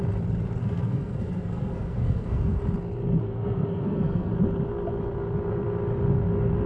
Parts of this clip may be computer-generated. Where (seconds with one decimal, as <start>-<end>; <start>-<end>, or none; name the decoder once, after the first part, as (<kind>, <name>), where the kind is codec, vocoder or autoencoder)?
0.6-2.6 (codec, SNAC); 3.2-4.3